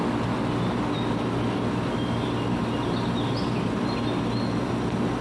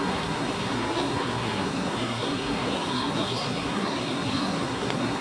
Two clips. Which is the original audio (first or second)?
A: first